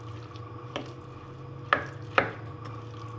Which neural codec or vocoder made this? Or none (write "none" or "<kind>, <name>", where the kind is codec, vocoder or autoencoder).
none